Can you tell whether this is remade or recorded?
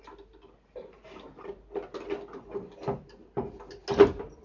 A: recorded